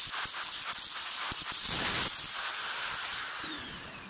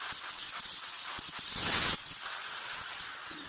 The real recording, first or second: first